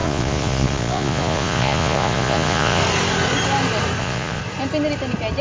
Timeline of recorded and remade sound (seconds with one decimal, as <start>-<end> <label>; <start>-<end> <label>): 0.0-2.8 remade; 2.8-4.0 recorded; 4.0-4.4 remade; 4.4-5.4 recorded